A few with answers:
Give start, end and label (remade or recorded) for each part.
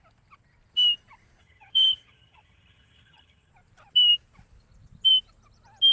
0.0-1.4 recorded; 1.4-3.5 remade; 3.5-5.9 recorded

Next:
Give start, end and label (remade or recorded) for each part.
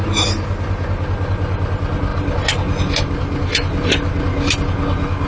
0.0-5.3 recorded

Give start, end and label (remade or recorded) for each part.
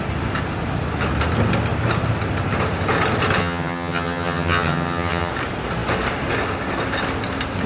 0.0-3.4 recorded; 3.4-5.3 remade; 5.3-7.7 recorded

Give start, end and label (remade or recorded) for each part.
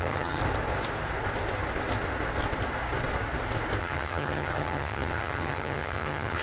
0.0-0.4 remade; 0.4-3.8 recorded; 3.8-6.4 remade